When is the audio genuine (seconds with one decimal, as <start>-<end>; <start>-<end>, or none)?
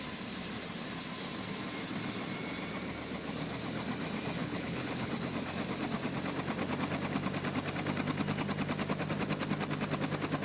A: 0.0-4.4; 5.1-10.4